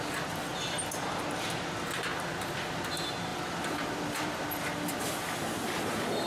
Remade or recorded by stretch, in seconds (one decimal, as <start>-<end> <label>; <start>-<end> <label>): 0.0-2.1 recorded; 2.1-2.8 remade; 2.8-3.3 recorded; 3.3-5.1 remade; 5.1-6.3 recorded